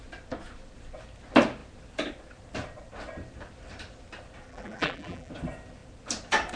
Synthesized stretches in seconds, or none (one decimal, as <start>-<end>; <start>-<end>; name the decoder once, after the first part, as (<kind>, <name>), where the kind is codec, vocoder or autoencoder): 4.5-5.3 (vocoder, BigVGAN v2)